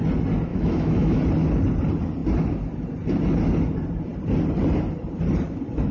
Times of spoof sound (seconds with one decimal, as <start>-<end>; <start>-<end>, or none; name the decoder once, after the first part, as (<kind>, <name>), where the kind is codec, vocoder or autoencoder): 0.5-1.2 (autoencoder, DAC-VAE)